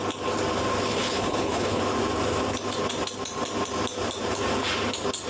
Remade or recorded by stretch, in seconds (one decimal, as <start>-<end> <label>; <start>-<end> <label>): 0.0-0.9 recorded; 0.9-1.8 remade; 1.8-5.3 recorded